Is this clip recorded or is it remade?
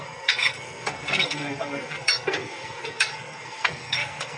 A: remade